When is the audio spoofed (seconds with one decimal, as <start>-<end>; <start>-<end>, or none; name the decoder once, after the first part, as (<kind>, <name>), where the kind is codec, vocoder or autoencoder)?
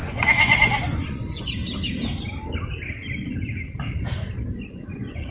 0.0-1.6 (vocoder, Vocos); 4.8-5.3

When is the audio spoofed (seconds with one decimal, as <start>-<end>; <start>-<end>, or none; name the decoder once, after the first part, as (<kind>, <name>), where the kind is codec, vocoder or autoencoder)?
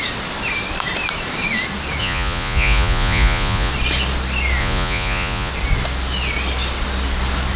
2.0-3.7 (vocoder, Vocos); 4.6-5.5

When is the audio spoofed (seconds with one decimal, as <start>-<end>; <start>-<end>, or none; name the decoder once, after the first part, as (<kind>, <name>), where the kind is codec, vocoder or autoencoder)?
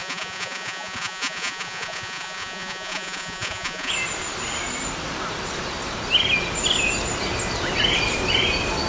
0.0-3.9 (vocoder, Vocos)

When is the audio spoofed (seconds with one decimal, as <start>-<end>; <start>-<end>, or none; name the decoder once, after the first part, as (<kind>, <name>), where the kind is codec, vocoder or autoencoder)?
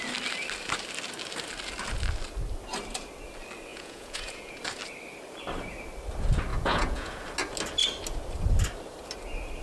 3.7-4.6 (vocoder, Vocos); 6.5-7.2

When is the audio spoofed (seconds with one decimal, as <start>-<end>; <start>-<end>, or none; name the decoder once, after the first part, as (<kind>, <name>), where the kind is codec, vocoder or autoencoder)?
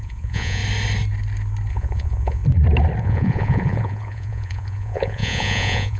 0.0-0.6 (vocoder, Vocos); 1.7-2.4; 3.0-6.0